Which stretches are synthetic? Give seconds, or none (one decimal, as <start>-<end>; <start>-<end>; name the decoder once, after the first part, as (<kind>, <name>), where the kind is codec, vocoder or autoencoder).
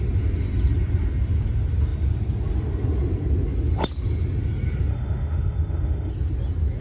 4.9-6.1 (autoencoder, DAC-VAE)